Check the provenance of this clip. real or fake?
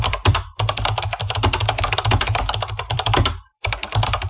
fake